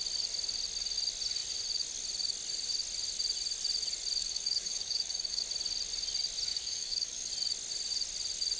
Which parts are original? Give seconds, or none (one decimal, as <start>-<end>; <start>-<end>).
0.0-4.2; 5.4-6.5; 7.3-8.6